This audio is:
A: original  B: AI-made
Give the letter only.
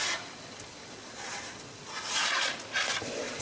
A